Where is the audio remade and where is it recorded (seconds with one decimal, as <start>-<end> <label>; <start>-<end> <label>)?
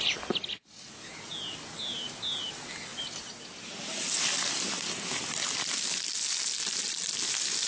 0.0-7.7 recorded